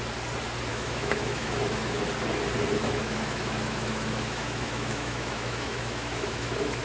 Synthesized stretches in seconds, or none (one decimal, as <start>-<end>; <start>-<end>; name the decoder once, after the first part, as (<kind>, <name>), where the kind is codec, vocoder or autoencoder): 0.7-2.0 (autoencoder, DAC-VAE); 2.8-6.8